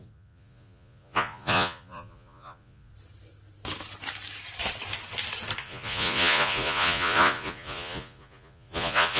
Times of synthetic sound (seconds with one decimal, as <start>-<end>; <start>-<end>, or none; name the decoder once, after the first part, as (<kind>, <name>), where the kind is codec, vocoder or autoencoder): 0.0-2.9 (vocoder, Vocos); 5.6-9.2